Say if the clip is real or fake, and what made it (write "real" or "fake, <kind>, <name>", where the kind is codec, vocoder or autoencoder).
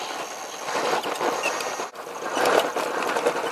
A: real